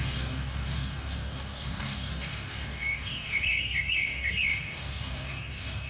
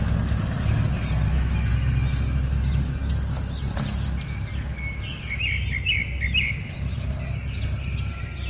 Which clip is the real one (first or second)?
second